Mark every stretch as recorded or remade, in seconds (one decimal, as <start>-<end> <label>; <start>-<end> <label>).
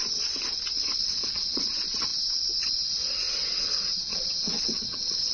0.0-1.0 recorded; 1.0-1.7 remade; 1.7-3.4 recorded; 3.4-5.3 remade